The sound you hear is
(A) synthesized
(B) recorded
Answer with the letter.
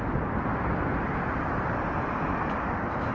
B